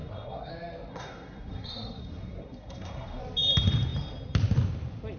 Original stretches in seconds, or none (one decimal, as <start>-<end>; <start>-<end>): 0.5-0.9; 3.2-5.2